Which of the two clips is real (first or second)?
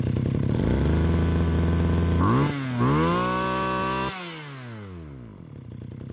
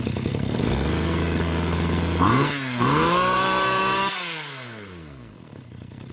first